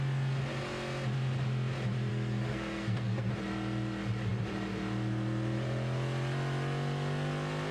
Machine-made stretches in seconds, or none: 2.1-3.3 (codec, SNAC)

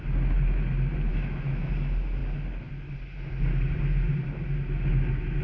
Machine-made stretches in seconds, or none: 1.1-1.7 (autoencoder, DAC-VAE)

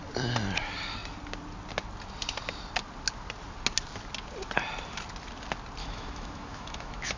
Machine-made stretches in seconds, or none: 5.8-7.2 (autoencoder, DAC-VAE)

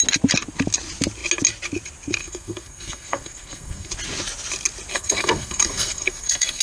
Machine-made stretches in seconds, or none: 2.2-3.9 (codec, SNAC); 4.9-6.6

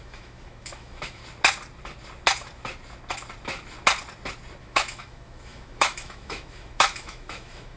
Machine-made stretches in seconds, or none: 0.0-1.2 (autoencoder, DAC-VAE); 4.6-7.8